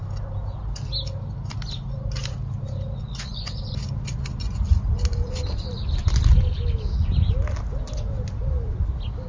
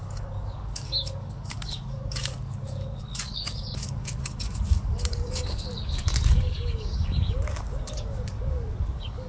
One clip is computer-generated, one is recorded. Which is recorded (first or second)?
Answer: first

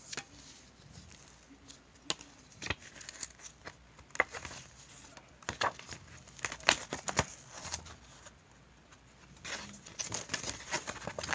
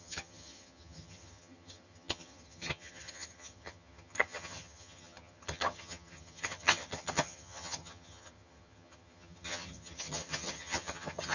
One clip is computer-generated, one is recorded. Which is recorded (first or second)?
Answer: first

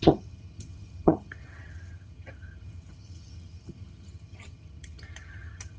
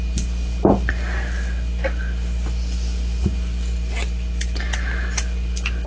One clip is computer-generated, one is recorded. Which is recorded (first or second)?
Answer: second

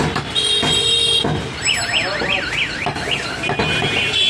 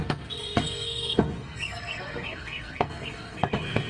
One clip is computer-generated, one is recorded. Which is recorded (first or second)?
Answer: first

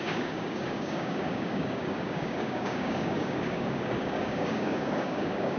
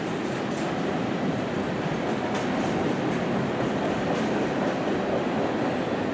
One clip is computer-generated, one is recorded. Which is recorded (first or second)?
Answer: second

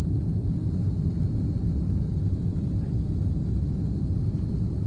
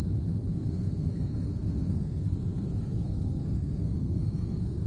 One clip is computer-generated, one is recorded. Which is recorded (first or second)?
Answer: first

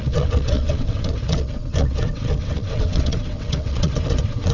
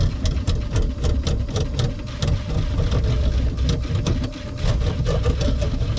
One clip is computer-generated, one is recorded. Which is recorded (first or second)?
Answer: second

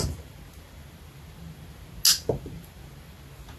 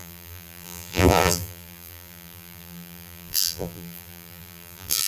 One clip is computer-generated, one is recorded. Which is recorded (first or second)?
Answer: first